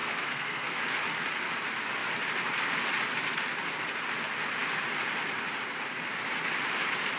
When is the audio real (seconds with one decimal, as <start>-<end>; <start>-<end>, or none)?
0.8-7.2